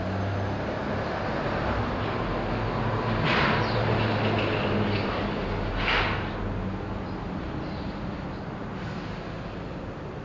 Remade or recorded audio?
recorded